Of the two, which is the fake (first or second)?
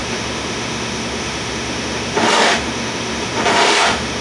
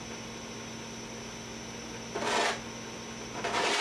first